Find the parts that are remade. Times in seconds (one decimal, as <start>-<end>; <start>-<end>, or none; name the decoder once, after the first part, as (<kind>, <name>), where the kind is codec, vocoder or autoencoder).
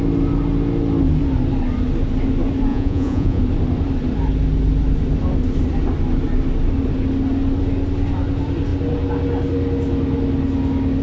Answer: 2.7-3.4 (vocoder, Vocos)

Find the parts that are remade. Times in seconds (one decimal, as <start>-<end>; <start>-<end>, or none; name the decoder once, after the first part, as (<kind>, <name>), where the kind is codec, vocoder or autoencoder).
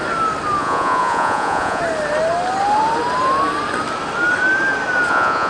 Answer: 0.6-1.8 (vocoder, Vocos); 5.1-5.5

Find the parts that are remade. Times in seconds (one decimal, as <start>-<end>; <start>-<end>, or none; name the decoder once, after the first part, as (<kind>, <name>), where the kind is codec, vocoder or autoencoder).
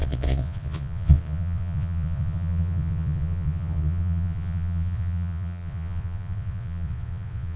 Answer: 0.0-7.6 (vocoder, Vocos)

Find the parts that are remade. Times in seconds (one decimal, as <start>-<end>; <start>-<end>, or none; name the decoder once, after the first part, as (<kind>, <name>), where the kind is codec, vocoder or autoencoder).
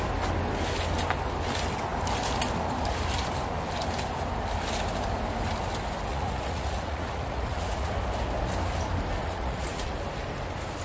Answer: 6.1-7.9 (vocoder, Vocos); 9.2-9.9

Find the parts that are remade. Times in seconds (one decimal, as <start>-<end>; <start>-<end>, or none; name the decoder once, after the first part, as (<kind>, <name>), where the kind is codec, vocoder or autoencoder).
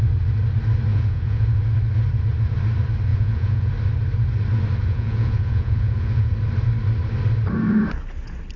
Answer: 0.9-1.6 (vocoder, Vocos); 3.1-3.7; 4.8-6.3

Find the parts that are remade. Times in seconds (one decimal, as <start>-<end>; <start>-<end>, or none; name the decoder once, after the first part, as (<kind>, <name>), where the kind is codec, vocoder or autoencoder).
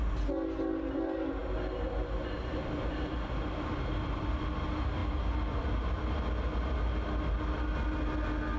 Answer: none